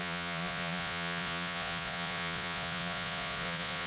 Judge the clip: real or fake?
fake